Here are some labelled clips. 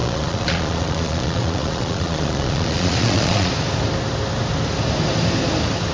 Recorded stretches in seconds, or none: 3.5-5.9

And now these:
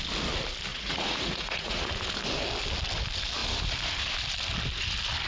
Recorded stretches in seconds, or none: 0.0-0.7; 1.9-5.3